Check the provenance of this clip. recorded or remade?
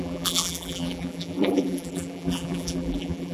remade